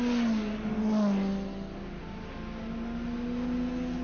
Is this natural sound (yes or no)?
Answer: yes